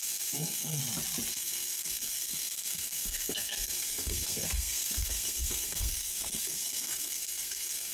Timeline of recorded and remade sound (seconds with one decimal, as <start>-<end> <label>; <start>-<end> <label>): 0.0-0.8 remade; 0.8-1.3 recorded; 1.3-7.9 remade